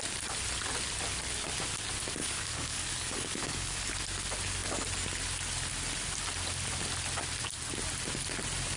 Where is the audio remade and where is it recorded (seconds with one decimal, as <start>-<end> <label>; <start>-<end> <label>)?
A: 0.0-2.2 recorded; 2.2-3.9 remade; 3.9-8.8 recorded